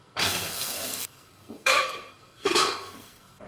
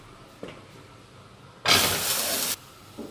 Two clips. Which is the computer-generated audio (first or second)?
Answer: first